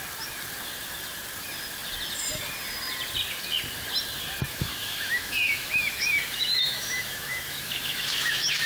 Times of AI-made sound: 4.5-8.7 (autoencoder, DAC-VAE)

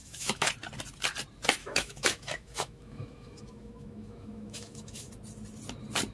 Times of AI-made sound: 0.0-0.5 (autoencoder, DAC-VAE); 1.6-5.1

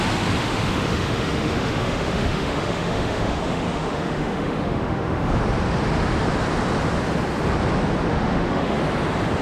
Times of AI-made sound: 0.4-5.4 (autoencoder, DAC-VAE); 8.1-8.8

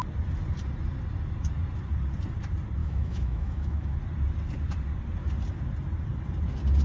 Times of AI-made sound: 2.8-4.0 (autoencoder, DAC-VAE)

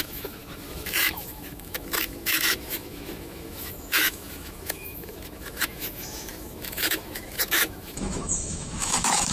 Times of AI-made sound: 0.0-9.3 (autoencoder, DAC-VAE)